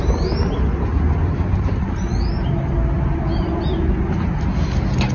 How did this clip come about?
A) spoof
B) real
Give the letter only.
B